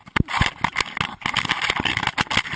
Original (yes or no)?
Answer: yes